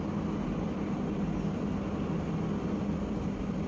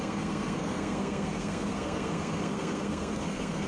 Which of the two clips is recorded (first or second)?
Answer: first